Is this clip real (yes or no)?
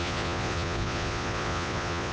no